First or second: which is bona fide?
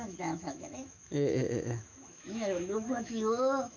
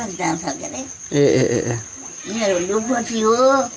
second